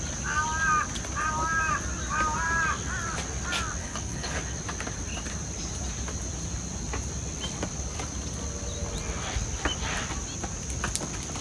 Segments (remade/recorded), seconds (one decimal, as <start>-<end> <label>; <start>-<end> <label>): 0.0-3.8 recorded; 3.8-4.4 remade; 4.4-11.4 recorded

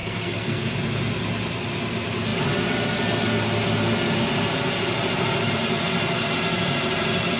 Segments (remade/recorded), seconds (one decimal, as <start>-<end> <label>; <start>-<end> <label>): 0.0-0.7 remade; 0.7-7.4 recorded

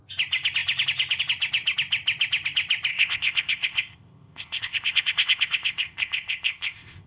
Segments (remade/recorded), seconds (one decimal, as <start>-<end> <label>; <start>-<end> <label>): 0.0-2.9 recorded; 2.9-7.1 remade

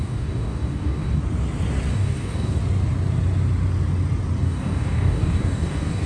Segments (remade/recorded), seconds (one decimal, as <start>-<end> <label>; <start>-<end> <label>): 0.0-1.2 remade; 1.2-1.9 recorded; 1.9-2.6 remade; 2.6-4.4 recorded; 4.4-6.1 remade

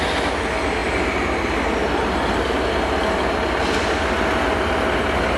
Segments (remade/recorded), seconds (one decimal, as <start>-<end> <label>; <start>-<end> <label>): 0.0-5.4 recorded

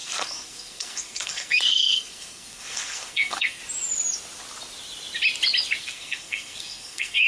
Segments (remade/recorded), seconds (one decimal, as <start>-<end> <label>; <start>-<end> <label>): 0.0-3.6 remade; 3.6-5.8 recorded; 5.8-7.3 remade